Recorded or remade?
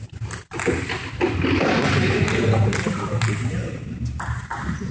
recorded